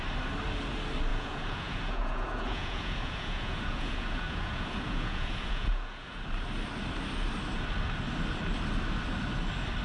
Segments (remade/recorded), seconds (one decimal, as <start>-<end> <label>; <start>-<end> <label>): 0.0-1.1 recorded; 1.1-6.2 remade; 6.2-9.8 recorded